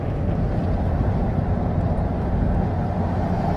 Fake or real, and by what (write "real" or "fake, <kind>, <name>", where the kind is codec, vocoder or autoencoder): real